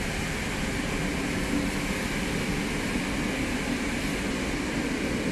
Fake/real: real